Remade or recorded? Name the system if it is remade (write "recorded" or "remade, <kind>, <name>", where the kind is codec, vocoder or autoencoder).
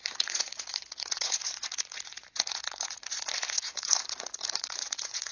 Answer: remade, vocoder, Vocos